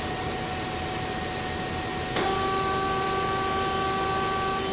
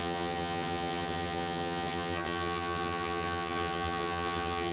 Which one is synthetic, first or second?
second